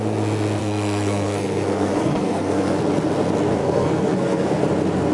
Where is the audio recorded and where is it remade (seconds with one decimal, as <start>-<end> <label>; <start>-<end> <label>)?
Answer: 0.0-0.6 recorded; 0.6-2.8 remade; 2.8-3.6 recorded; 3.6-4.6 remade; 4.6-5.1 recorded